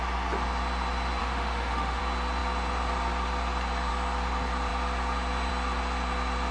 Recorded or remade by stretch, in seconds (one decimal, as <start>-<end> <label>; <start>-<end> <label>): 0.0-1.2 recorded; 1.2-2.0 remade; 2.0-6.5 recorded